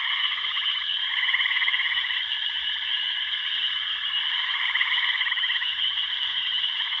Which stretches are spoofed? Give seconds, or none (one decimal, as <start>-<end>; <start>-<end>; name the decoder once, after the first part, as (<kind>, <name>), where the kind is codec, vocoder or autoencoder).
0.0-7.0 (autoencoder, DAC-VAE)